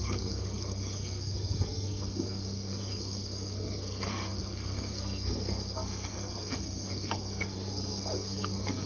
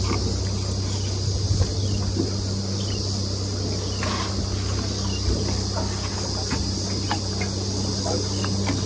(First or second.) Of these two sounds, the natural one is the second